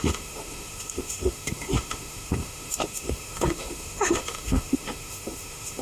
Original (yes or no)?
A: no